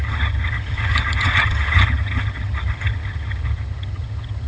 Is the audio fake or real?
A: fake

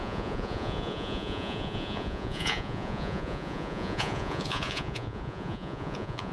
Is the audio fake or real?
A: fake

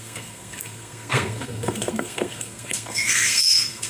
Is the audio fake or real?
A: fake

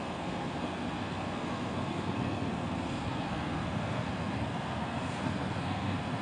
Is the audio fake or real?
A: fake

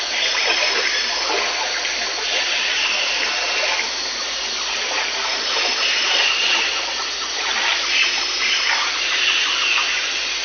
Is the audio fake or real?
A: real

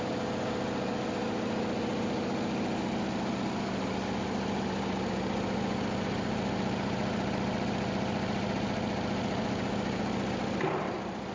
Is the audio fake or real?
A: real